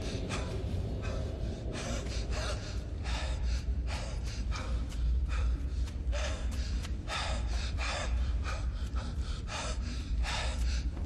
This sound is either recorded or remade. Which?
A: remade